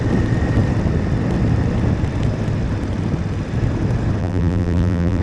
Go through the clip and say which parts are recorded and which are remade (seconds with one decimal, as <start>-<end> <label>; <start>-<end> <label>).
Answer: 0.0-4.2 recorded; 4.2-5.2 remade